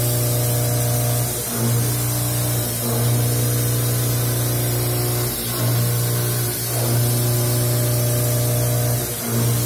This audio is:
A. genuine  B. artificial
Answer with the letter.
A